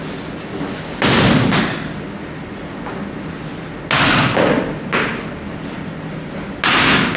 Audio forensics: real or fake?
real